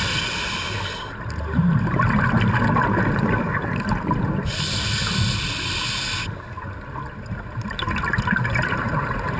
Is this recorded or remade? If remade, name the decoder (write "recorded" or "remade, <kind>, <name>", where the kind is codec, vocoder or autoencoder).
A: recorded